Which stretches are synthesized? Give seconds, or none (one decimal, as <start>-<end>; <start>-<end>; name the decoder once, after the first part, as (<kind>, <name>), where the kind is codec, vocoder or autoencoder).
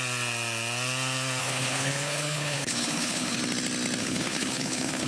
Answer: 1.4-3.4 (codec, HILCodec); 4.0-5.1